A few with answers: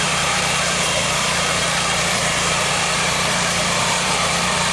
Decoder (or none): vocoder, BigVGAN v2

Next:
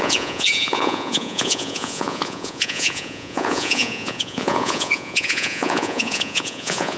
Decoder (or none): vocoder, Vocos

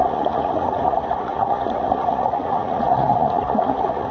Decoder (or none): vocoder, Vocos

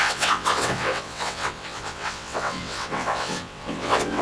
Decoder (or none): vocoder, WaveNeXt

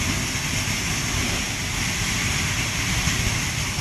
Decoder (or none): none